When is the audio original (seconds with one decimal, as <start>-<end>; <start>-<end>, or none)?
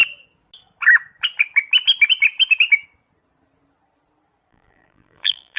0.0-4.5